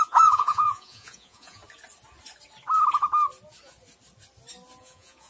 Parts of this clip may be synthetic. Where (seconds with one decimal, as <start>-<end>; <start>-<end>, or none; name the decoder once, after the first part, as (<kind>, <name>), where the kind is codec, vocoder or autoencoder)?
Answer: 0.0-1.6 (vocoder, Vocos); 4.8-5.3